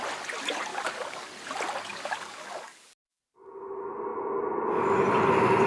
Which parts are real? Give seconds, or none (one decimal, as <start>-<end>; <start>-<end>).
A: 0.0-0.7; 1.3-1.9; 3.2-5.7